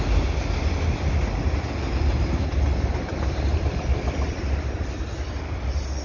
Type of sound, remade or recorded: recorded